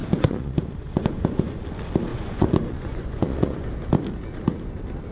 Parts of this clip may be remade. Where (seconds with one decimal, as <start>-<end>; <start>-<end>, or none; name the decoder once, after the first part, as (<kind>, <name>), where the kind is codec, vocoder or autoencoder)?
0.0-1.6 (vocoder, Vocos); 2.1-3.7